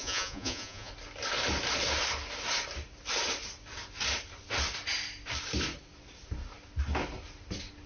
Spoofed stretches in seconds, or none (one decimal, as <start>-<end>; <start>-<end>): 0.0-0.9